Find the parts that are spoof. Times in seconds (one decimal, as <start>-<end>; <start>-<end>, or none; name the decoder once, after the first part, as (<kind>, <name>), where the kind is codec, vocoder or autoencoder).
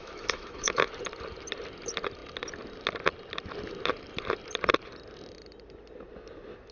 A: 0.0-0.9 (autoencoder, DAC-VAE)